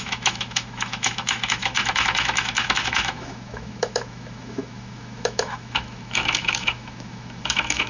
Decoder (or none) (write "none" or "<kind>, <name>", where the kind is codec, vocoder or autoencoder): autoencoder, DAC-VAE